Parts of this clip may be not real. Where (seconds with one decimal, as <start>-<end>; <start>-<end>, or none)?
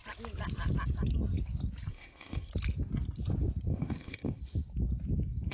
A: 1.9-2.5; 3.7-4.4